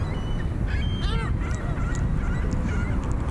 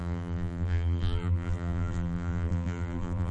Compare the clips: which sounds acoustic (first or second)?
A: first